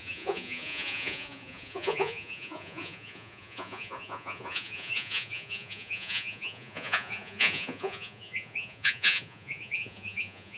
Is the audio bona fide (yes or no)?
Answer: no